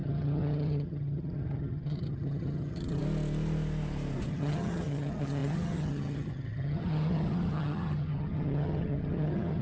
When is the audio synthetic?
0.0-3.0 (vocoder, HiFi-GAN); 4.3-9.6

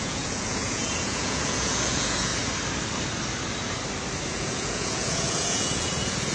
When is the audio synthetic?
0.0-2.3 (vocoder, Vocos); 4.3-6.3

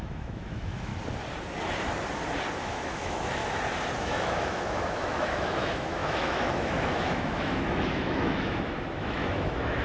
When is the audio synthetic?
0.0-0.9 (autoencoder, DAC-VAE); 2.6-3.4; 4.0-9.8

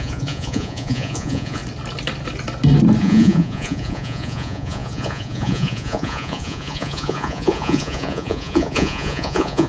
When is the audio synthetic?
0.0-1.6 (vocoder, Vocos); 3.0-9.7

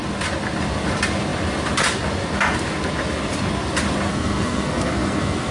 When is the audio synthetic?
4.1-5.5 (codec, SNAC)